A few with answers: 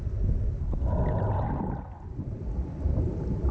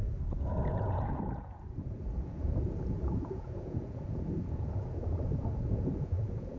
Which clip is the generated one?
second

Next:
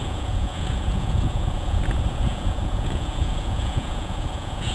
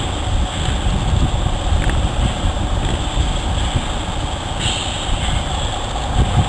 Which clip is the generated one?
first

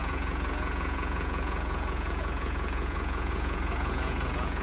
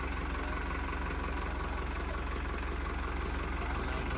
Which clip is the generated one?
first